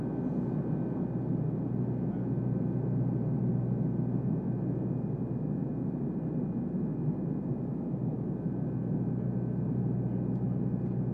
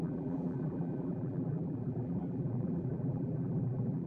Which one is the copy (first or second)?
second